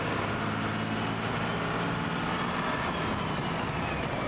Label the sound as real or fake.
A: real